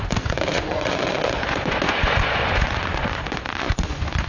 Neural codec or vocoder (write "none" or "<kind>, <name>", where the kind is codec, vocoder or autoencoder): vocoder, Vocos